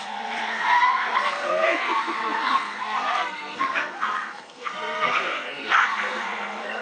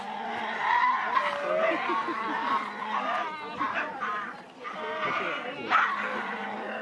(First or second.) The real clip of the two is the second